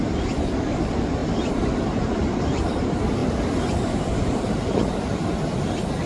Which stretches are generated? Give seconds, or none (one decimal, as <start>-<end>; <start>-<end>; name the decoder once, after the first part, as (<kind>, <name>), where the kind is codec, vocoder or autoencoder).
0.0-3.2 (vocoder, BigVGAN v2); 4.0-6.1